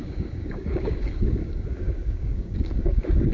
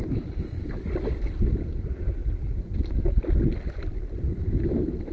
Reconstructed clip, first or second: first